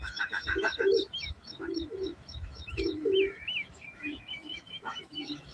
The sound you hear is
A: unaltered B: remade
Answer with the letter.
B